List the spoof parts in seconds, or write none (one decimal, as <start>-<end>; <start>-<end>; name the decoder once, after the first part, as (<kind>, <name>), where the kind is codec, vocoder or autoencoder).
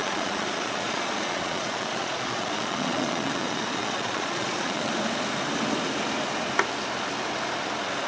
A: 0.0-4.9 (vocoder, Vocos)